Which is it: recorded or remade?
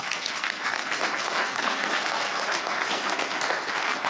remade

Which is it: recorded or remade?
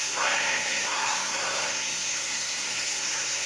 remade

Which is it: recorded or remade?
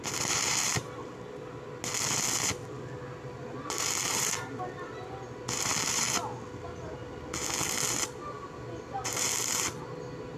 recorded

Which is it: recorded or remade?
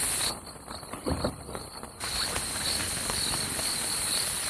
recorded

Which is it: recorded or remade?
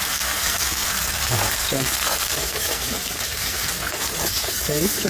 remade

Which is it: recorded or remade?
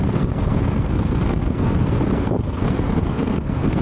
remade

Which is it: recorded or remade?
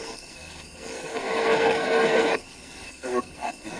remade